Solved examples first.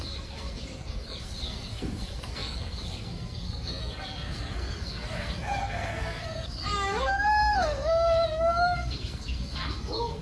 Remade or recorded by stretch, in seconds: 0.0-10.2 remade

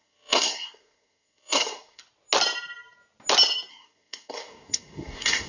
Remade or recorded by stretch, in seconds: 0.0-2.0 remade; 2.0-3.7 recorded; 3.7-5.5 remade